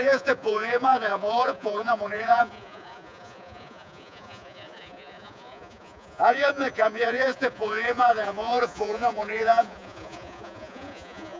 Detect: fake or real fake